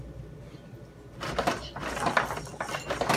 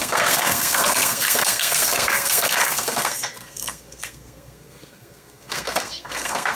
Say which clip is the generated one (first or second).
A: second